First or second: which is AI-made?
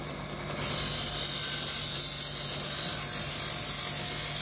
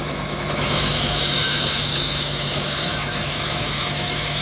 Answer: second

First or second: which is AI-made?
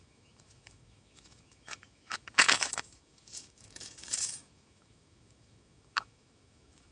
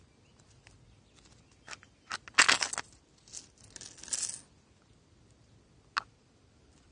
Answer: first